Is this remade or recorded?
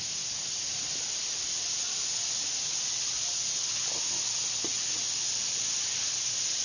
recorded